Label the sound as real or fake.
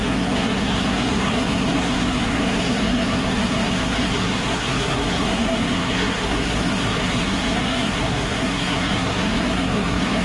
fake